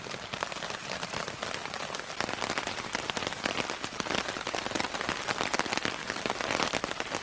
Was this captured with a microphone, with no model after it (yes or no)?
yes